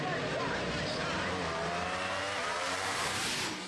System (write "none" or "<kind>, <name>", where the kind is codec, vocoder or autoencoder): vocoder, BigVGAN v2